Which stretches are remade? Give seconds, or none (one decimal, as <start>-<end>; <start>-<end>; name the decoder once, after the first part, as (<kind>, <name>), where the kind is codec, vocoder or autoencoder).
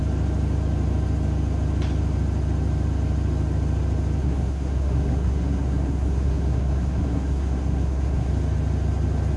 4.2-8.3 (codec, SNAC)